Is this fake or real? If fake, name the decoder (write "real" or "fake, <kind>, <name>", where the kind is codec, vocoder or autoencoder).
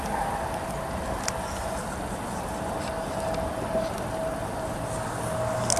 real